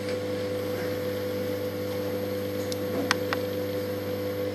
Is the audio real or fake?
real